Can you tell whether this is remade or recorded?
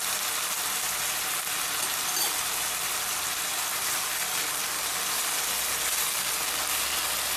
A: recorded